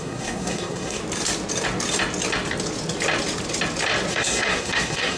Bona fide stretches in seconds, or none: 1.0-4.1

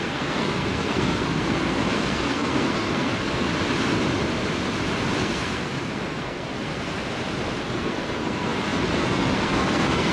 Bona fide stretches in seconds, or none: 3.5-5.2; 7.0-7.6

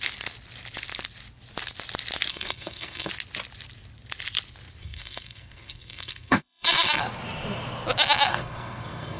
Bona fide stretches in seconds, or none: 0.0-2.3; 3.1-4.8; 7.0-8.3

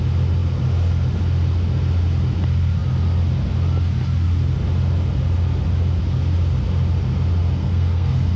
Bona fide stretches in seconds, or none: 0.0-7.6

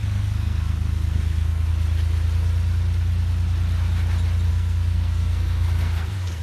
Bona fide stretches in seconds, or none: 1.7-4.5